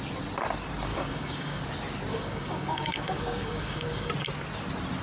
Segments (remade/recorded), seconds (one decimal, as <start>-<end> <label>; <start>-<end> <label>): 0.0-0.9 recorded; 0.9-1.6 remade; 1.6-2.1 recorded; 2.1-4.1 remade; 4.1-5.0 recorded